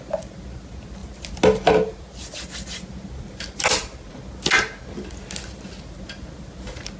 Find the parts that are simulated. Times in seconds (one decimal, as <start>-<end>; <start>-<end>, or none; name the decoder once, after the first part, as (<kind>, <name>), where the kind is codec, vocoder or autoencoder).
none